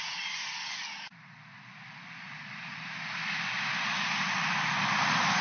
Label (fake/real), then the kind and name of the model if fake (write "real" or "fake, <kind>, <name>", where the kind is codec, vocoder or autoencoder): fake, vocoder, BigVGAN v2